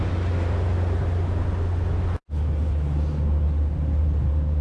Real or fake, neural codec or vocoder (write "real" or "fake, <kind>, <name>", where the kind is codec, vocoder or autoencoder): real